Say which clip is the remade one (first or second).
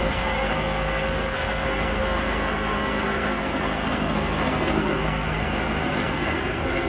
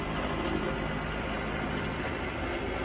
first